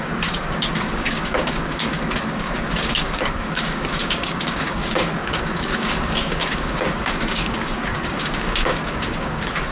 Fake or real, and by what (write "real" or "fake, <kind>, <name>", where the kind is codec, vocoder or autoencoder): fake, codec, DAC